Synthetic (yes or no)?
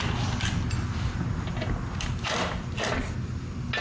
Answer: no